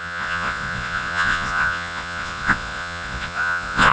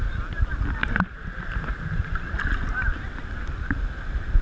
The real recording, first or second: second